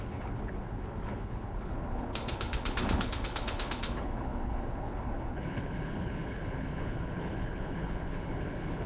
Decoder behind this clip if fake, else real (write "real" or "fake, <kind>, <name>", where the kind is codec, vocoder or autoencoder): fake, codec, HILCodec